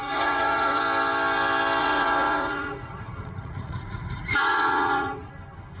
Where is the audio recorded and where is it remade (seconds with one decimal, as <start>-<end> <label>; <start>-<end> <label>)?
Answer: 0.0-0.8 remade; 0.8-1.8 recorded; 1.8-5.3 remade; 5.3-5.8 recorded